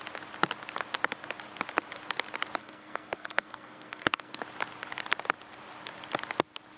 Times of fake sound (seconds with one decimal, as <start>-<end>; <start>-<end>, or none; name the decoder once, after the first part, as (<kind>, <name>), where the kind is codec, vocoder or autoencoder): 2.6-4.4 (codec, SNAC)